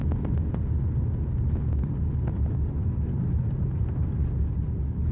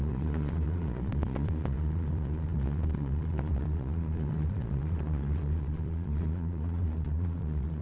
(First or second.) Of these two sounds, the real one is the first